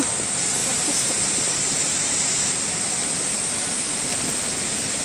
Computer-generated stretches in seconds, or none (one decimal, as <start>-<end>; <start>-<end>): none